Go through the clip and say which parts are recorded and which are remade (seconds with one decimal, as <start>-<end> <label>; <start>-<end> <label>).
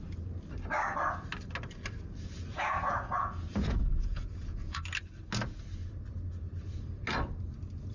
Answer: 0.0-2.5 recorded; 2.5-4.8 remade; 4.8-7.9 recorded